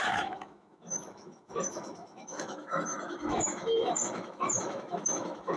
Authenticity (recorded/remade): remade